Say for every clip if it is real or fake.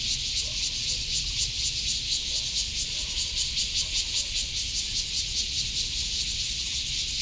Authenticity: real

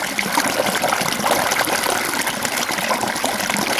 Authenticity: real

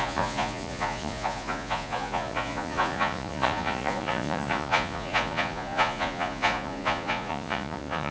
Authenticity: fake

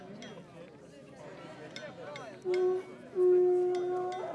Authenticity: real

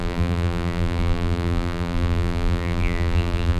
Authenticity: fake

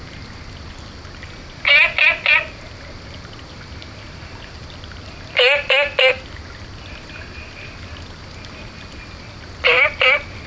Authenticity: real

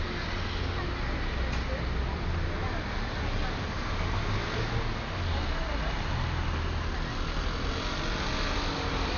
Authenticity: real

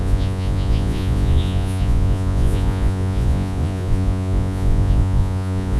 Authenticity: fake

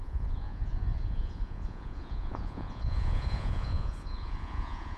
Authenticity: fake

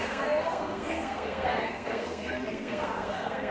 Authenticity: fake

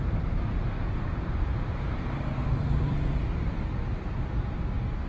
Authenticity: fake